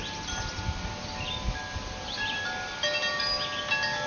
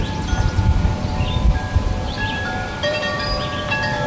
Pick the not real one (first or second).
second